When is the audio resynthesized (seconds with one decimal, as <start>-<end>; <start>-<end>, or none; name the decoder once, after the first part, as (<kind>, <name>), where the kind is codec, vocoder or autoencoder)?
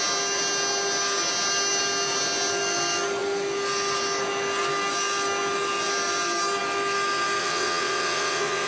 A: 7.4-8.7 (vocoder, WaveNeXt)